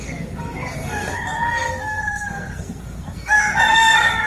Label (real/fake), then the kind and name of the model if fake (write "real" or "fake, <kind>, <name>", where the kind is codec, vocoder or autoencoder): fake, codec, SNAC